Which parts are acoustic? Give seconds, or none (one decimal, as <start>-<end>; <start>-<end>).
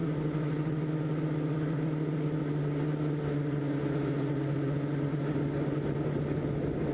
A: 0.0-6.9